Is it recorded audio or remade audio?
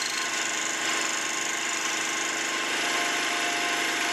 recorded